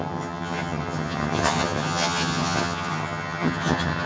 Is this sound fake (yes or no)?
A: yes